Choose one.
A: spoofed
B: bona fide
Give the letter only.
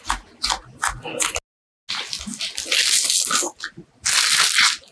B